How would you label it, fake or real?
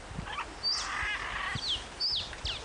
real